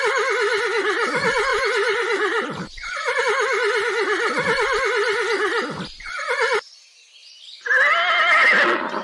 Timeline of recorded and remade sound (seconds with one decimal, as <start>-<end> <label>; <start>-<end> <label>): 0.0-1.5 recorded; 1.5-3.2 remade; 3.2-9.0 recorded